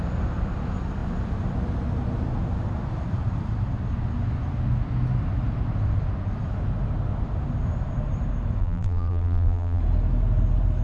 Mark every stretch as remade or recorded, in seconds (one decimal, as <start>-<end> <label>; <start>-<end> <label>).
0.0-8.6 recorded; 8.6-9.8 remade; 9.8-10.8 recorded